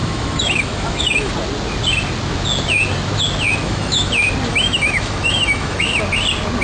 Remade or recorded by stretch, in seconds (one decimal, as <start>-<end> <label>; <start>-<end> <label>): 0.0-1.3 remade; 1.3-3.6 recorded; 3.6-4.1 remade; 4.1-4.5 recorded; 4.5-6.0 remade; 6.0-6.6 recorded